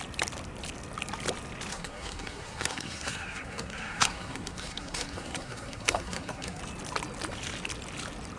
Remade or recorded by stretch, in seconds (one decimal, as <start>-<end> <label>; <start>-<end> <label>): 0.0-1.7 recorded; 1.7-6.6 remade; 6.6-8.4 recorded

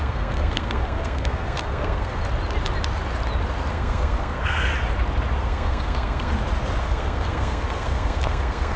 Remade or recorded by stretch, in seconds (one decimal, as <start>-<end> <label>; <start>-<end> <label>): 0.0-2.2 remade; 2.2-3.7 recorded; 3.7-4.7 remade; 4.7-5.4 recorded; 5.4-6.3 remade; 6.3-6.8 recorded; 6.8-8.8 remade

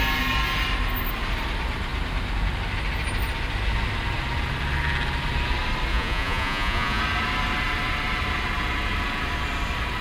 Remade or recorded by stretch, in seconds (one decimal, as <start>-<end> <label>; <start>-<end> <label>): 0.0-5.9 recorded; 5.9-7.0 remade; 7.0-10.0 recorded